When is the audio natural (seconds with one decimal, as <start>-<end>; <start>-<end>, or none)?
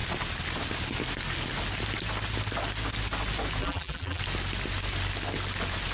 0.0-3.6; 4.2-5.9